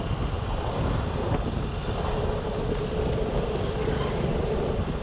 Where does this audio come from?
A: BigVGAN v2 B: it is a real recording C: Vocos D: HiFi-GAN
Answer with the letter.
A